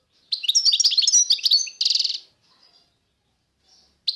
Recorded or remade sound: recorded